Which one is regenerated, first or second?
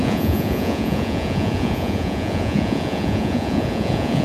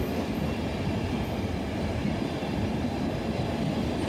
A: first